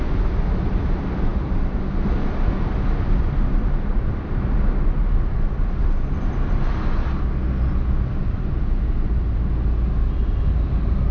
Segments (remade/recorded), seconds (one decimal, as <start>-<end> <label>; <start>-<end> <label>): 0.0-11.1 recorded